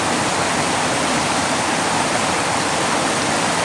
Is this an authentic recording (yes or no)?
no